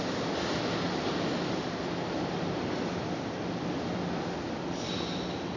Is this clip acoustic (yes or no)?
yes